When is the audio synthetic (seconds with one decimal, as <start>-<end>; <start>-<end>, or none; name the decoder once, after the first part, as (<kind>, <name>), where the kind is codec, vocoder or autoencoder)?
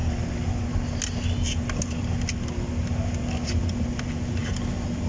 none